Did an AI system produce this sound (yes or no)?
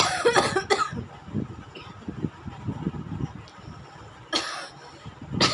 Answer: no